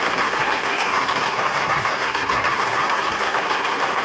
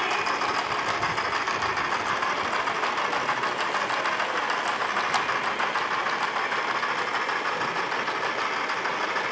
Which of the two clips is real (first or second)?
second